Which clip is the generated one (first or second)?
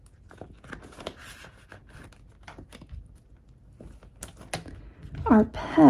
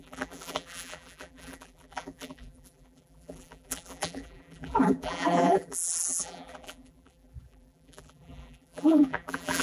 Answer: second